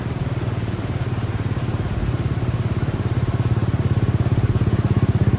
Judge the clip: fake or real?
real